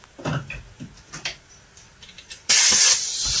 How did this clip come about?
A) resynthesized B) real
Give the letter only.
B